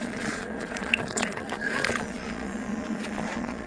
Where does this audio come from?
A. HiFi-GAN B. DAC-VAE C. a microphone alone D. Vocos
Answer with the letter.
D